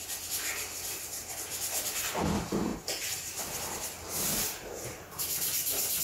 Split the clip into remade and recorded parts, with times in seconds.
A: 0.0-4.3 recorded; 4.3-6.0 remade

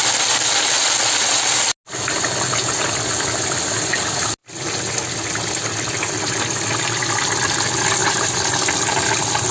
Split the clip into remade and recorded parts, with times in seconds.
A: 0.0-8.0 recorded; 8.0-8.5 remade; 8.5-9.5 recorded

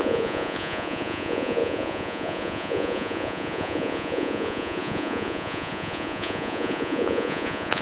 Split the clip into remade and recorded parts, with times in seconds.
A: 0.0-7.8 remade

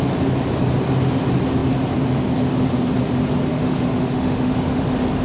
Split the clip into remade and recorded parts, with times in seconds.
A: 0.0-3.5 recorded; 3.5-4.8 remade; 4.8-5.2 recorded

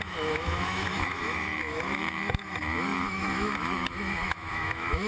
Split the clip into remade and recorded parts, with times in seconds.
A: 0.0-5.1 remade